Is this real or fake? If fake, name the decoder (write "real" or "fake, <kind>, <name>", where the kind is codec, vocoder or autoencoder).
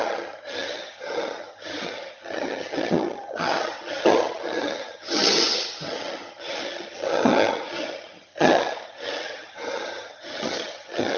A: fake, vocoder, HiFi-GAN